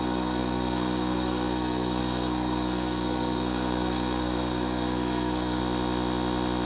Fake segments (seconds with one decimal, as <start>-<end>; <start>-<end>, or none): 0.0-5.6